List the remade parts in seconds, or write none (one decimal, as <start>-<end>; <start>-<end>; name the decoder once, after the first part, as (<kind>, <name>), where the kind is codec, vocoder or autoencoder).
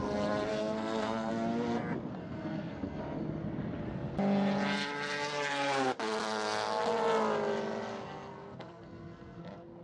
0.5-1.3 (codec, SNAC); 2.2-3.0; 7.9-9.4